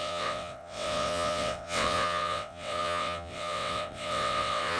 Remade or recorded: remade